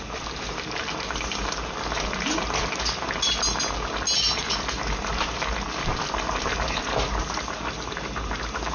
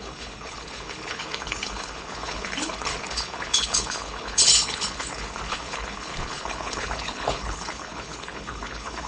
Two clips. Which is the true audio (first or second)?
first